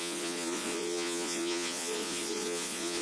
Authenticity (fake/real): fake